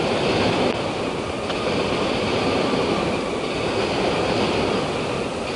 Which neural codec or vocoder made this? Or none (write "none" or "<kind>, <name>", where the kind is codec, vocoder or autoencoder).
none